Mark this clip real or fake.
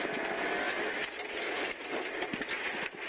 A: real